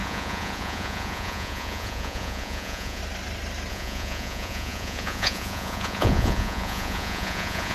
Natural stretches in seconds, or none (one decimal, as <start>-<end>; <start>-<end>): 3.0-3.7